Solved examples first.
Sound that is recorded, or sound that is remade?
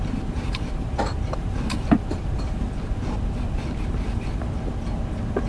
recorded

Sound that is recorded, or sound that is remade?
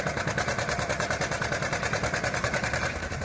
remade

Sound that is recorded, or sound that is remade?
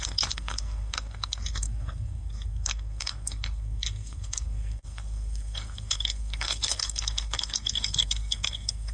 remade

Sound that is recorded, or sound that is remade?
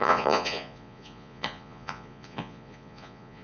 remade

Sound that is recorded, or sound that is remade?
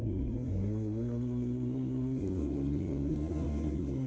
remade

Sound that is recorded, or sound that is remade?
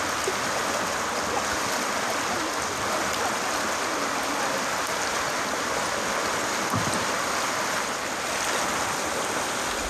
recorded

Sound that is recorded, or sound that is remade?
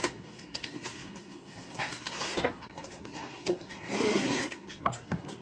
remade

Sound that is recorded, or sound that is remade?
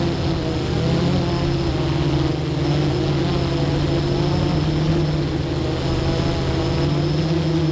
recorded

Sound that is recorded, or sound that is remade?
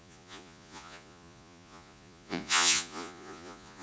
remade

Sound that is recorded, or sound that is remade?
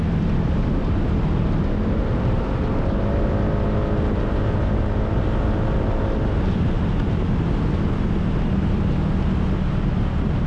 recorded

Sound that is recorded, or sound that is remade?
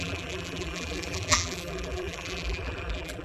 remade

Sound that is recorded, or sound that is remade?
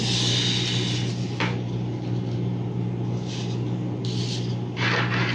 recorded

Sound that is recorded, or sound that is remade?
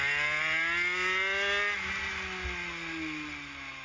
recorded